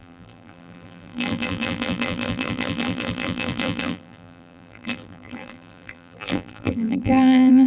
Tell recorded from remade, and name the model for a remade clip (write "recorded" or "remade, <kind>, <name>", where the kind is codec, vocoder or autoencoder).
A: remade, vocoder, BigVGAN v2